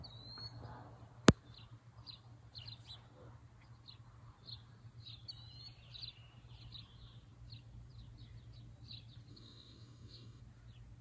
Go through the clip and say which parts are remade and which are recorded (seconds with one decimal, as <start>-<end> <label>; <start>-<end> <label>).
0.0-9.3 recorded; 9.3-10.4 remade; 10.4-11.0 recorded